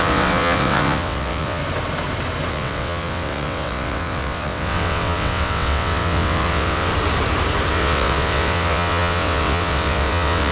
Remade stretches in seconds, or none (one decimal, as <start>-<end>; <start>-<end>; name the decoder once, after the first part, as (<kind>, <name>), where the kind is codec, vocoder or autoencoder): 0.0-1.6 (vocoder, WaveNeXt); 2.5-6.9; 7.7-10.5